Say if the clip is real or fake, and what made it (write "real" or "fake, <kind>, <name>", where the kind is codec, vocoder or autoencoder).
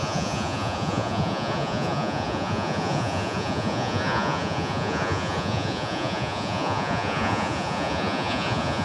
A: fake, vocoder, Vocos